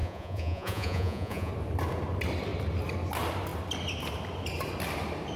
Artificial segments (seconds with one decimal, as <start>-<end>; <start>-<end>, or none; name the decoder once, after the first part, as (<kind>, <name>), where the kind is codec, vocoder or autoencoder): 0.0-1.5 (vocoder, Vocos)